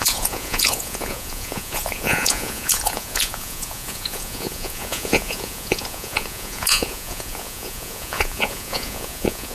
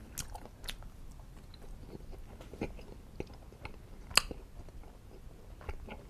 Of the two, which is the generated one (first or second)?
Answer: first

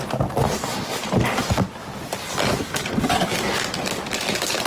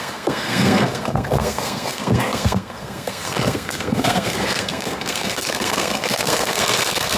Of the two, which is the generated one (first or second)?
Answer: second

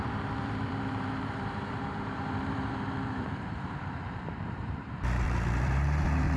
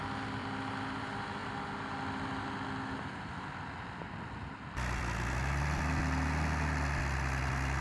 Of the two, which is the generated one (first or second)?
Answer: first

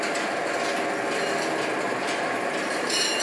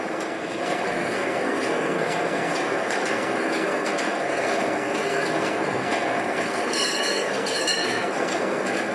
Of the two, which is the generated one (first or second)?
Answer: second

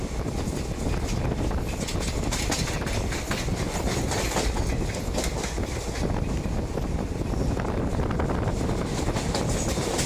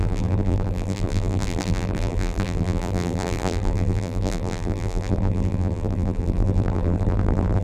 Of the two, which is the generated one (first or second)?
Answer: second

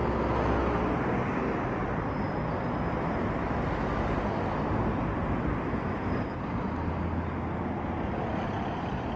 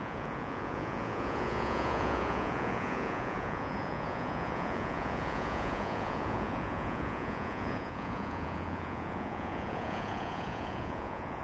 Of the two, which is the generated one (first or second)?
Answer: second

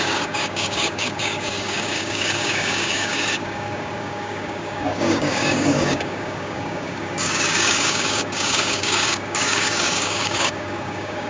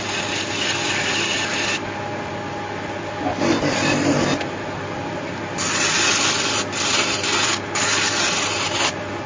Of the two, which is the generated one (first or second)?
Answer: first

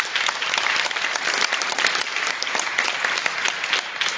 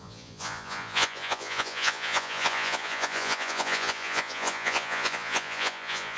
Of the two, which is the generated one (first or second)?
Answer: second